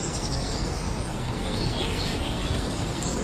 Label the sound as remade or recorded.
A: remade